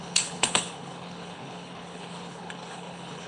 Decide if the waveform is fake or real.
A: fake